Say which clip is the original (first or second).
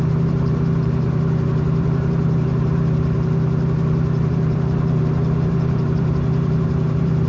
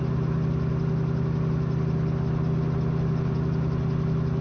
second